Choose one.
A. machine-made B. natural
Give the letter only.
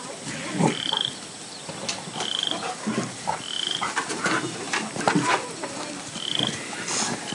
B